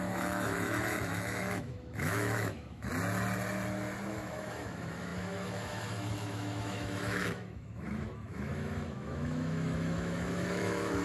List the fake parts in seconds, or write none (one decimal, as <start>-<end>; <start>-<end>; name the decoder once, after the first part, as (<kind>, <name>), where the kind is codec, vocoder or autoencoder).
0.0-2.9 (autoencoder, DAC-VAE); 4.1-11.0